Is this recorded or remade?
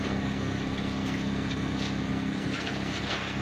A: remade